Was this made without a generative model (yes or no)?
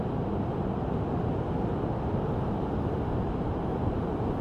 yes